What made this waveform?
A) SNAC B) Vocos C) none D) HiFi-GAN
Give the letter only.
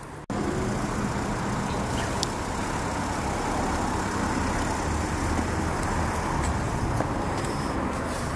C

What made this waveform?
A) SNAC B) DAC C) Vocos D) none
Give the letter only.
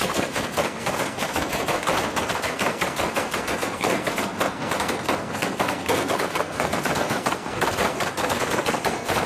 A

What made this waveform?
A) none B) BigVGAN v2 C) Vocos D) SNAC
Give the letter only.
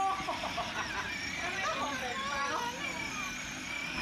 A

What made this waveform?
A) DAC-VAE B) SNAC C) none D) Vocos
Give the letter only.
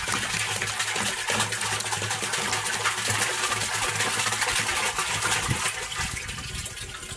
C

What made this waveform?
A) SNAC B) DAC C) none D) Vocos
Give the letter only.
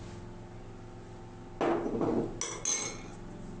C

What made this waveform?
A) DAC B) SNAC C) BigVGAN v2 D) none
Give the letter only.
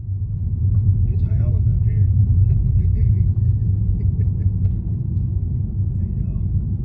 D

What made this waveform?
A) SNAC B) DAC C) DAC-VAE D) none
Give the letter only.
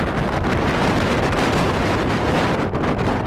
D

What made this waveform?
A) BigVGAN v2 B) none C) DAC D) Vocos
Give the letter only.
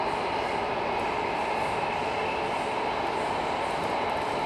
B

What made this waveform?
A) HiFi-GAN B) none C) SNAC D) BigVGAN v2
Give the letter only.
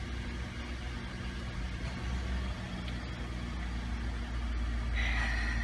B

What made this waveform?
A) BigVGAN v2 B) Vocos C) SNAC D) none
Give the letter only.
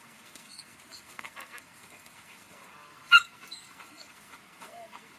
C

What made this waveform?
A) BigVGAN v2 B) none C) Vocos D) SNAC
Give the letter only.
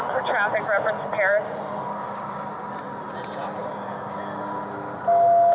B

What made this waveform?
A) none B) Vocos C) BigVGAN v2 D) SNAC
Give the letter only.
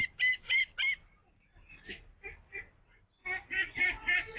A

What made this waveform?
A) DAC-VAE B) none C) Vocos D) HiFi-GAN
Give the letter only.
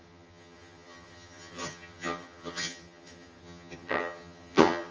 D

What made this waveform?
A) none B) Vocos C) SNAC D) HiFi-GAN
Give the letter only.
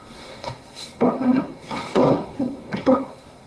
C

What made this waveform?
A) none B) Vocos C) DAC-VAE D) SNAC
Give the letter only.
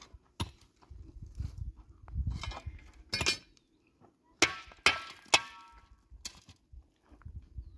A